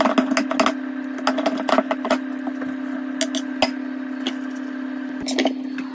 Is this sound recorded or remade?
recorded